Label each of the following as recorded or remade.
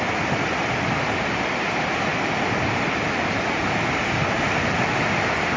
recorded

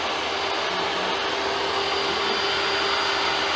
recorded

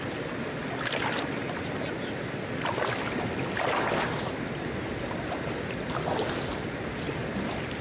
recorded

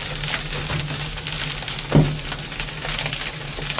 recorded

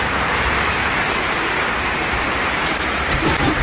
remade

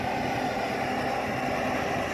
recorded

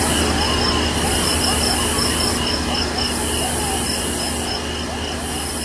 recorded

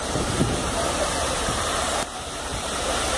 remade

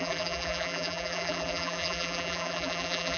remade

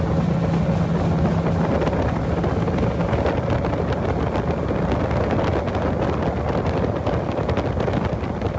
recorded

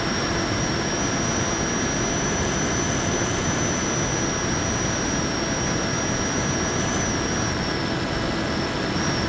recorded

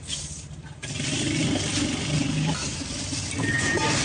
remade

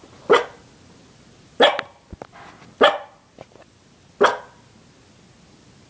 recorded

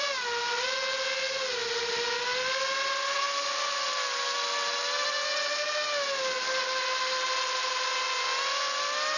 recorded